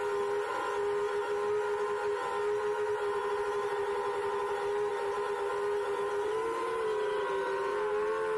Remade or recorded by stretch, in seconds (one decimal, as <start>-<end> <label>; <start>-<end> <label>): 0.0-8.4 recorded